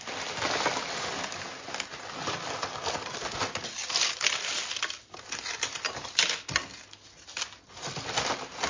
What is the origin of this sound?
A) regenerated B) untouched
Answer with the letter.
B